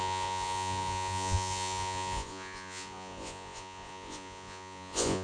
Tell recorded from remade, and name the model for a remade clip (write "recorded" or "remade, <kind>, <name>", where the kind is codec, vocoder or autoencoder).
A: remade, vocoder, Vocos